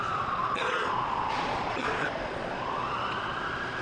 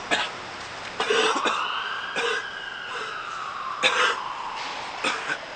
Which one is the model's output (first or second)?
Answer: first